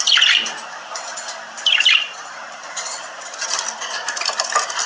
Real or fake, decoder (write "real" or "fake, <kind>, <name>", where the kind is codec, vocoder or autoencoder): real